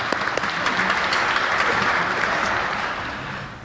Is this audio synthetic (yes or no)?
no